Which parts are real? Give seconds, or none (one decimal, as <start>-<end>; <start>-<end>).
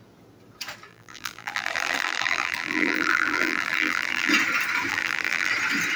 0.0-0.9; 4.3-4.9; 5.5-6.0